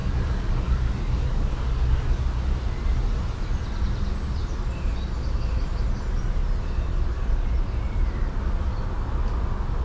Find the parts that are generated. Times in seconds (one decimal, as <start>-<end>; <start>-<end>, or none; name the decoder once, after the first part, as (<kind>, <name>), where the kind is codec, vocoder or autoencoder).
0.0-2.2 (codec, DAC)